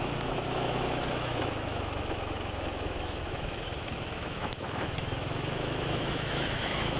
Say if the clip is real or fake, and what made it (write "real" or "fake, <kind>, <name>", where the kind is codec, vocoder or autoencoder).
fake, autoencoder, DAC-VAE